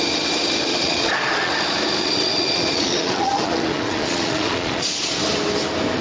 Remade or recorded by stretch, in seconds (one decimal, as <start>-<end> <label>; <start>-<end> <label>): 0.0-0.7 recorded; 0.7-1.5 remade; 1.5-2.0 recorded; 2.0-5.2 remade; 5.2-6.0 recorded